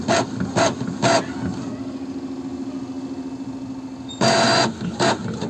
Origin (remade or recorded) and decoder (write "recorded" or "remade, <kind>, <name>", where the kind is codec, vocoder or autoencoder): recorded